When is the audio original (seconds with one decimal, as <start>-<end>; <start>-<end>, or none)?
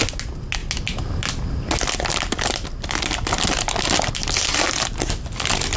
0.0-5.8